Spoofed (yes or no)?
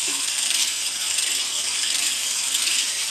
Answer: yes